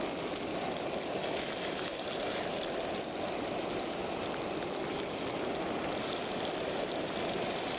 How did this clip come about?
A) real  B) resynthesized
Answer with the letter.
A